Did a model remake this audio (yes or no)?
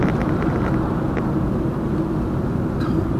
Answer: no